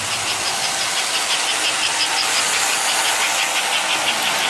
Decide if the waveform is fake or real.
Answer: real